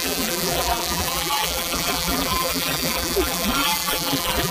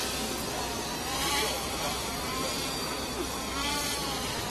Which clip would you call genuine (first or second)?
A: second